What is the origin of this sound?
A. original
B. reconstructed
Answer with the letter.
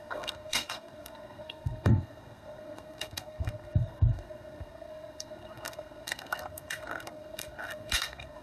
B